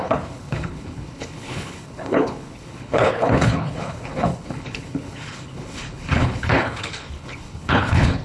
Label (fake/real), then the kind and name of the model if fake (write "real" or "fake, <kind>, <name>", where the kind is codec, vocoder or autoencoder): fake, codec, HILCodec